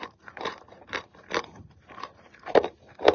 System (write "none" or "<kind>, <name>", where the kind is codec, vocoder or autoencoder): vocoder, BigVGAN v2